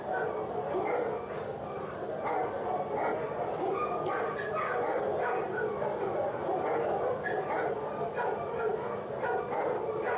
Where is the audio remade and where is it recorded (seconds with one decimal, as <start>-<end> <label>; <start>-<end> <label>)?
0.0-10.2 recorded